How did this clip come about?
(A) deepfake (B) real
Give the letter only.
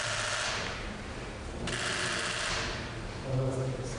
B